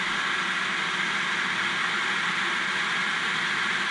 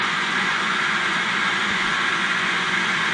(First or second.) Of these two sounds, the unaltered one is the first